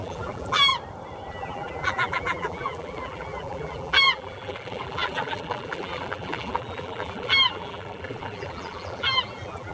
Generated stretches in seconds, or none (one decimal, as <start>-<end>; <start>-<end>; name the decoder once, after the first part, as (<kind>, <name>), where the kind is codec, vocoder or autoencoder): 0.0-0.7 (vocoder, BigVGAN v2); 1.3-9.7